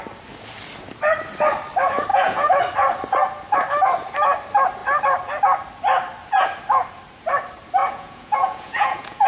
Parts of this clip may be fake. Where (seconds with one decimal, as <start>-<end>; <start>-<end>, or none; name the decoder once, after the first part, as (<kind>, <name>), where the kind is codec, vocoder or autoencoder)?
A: 2.1-2.6 (vocoder, Vocos); 7.8-9.3